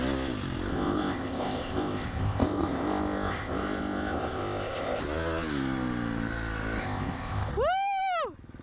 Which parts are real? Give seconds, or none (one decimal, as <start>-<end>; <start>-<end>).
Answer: 0.0-0.7; 5.0-6.8; 7.5-8.6